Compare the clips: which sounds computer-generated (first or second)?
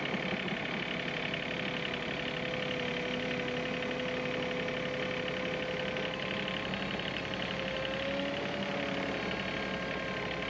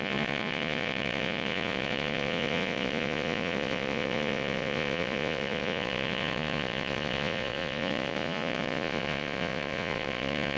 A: second